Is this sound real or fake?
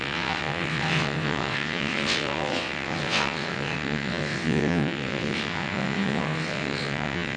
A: fake